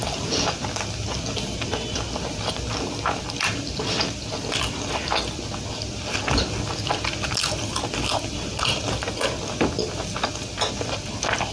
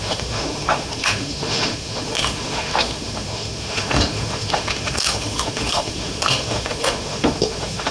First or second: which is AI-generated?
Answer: second